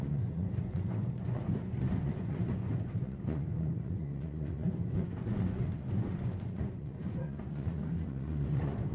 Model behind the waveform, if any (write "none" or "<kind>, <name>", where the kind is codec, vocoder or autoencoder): vocoder, Vocos